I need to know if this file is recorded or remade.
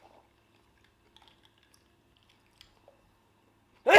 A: recorded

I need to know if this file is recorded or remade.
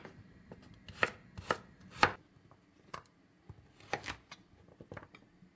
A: recorded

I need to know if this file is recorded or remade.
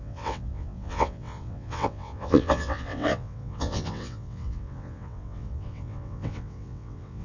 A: remade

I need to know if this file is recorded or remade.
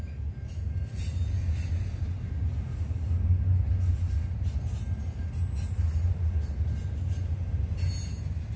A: recorded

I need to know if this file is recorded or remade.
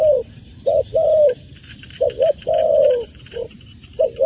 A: remade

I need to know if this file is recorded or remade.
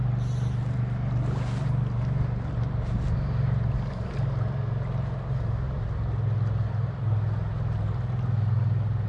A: recorded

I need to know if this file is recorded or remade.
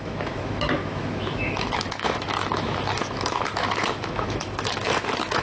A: remade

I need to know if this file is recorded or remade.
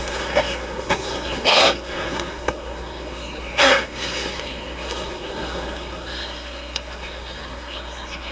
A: remade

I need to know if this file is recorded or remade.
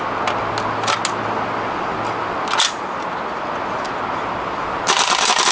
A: recorded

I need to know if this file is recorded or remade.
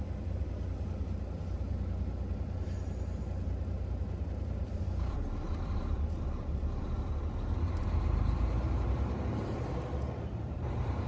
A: remade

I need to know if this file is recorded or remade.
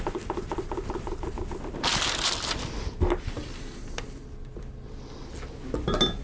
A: recorded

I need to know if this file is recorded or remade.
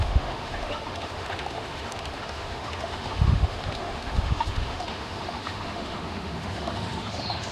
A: remade